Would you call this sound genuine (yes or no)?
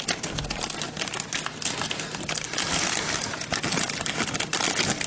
yes